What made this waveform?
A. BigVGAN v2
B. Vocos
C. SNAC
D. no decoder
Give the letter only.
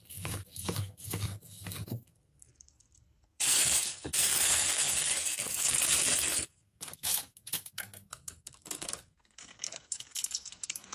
C